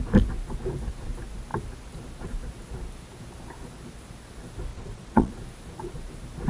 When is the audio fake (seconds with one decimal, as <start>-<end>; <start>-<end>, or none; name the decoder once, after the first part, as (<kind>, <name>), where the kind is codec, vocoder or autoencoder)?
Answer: 4.7-5.3 (vocoder, Vocos)